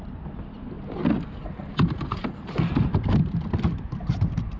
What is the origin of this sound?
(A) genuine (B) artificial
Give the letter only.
A